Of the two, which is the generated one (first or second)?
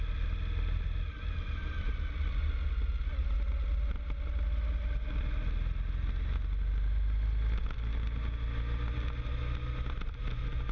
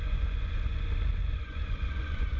second